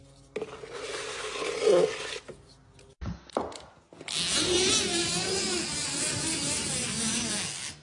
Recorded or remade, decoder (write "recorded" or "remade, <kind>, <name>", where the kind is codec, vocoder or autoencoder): recorded